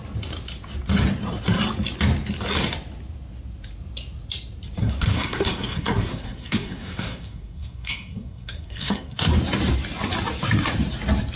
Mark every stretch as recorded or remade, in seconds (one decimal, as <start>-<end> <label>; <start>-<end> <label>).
0.0-4.8 recorded; 4.8-9.3 remade; 9.3-11.4 recorded